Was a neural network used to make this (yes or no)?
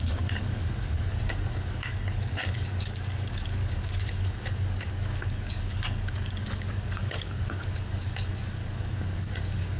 yes